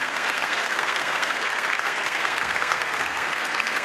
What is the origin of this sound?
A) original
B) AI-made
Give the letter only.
B